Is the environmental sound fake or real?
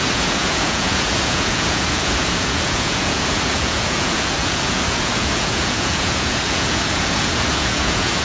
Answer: fake